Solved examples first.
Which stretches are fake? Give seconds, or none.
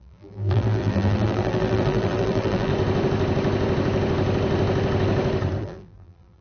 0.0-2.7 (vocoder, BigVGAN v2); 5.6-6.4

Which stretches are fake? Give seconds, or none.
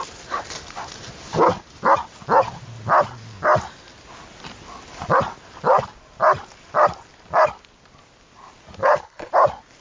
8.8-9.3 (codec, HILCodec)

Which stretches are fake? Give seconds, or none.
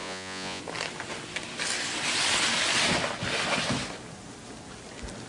0.0-0.6 (vocoder, Vocos)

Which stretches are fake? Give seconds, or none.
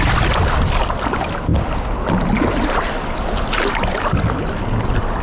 none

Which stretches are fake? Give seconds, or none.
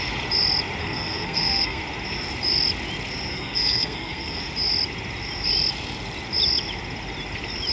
0.8-1.8 (codec, SNAC); 3.3-4.4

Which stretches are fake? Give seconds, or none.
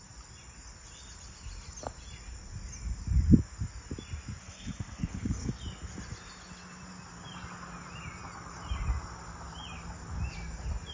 4.4-5.6 (codec, SNAC)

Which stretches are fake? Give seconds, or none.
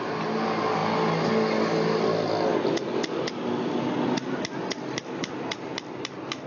none